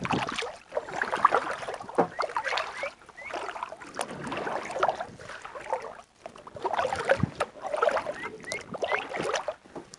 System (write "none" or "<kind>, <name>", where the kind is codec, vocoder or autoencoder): none